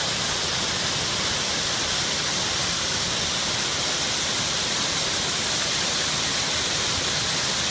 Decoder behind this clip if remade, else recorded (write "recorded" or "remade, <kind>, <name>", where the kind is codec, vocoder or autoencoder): recorded